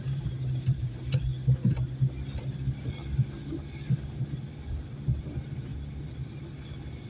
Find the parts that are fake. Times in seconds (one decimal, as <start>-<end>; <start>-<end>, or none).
0.0-1.3; 5.2-5.7